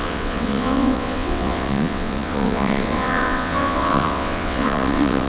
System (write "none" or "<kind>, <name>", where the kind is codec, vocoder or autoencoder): vocoder, WaveNeXt